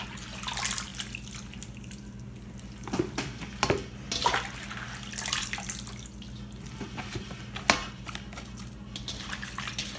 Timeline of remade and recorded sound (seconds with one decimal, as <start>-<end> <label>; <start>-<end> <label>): 0.0-10.0 recorded